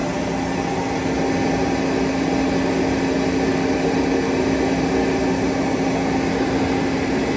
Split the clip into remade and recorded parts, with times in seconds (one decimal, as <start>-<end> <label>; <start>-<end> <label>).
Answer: 0.0-7.4 recorded